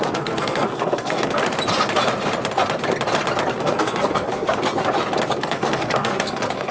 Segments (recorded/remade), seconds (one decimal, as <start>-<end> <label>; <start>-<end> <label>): 0.0-1.4 remade; 1.4-3.6 recorded; 3.6-4.6 remade; 4.6-5.3 recorded; 5.3-6.7 remade